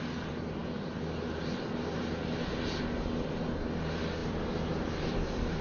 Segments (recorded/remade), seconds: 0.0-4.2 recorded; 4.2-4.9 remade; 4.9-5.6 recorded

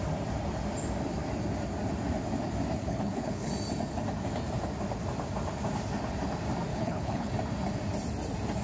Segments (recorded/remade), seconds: 0.0-2.8 recorded; 2.8-3.5 remade; 3.5-6.7 recorded; 6.7-7.3 remade; 7.3-8.6 recorded

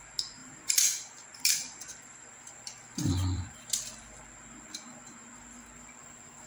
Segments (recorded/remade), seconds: 0.0-0.4 recorded; 0.4-3.6 remade; 3.6-6.5 recorded

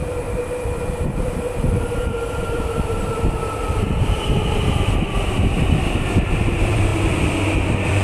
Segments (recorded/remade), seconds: 0.0-8.0 remade

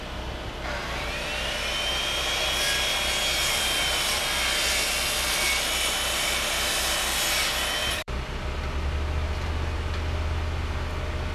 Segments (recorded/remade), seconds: 0.0-3.4 recorded; 3.4-4.2 remade; 4.2-7.8 recorded; 7.8-8.6 remade; 8.6-11.3 recorded

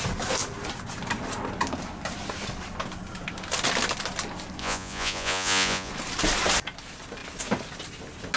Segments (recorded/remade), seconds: 0.0-4.6 recorded; 4.6-5.9 remade; 5.9-8.4 recorded

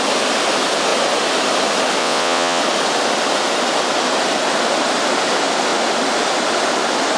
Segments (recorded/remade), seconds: 0.0-2.0 recorded; 2.0-2.6 remade; 2.6-7.2 recorded

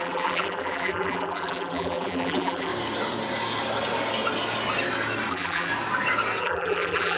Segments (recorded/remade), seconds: 0.0-2.7 remade; 2.7-5.3 recorded; 5.3-5.7 remade; 5.7-6.4 recorded; 6.4-7.2 remade